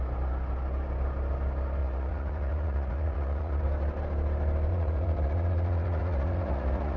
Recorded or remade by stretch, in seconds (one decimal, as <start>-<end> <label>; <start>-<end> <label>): 0.0-1.8 recorded; 1.8-3.6 remade; 3.6-4.7 recorded; 4.7-7.0 remade